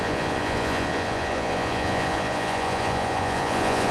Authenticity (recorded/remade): remade